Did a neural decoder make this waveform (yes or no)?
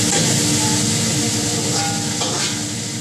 no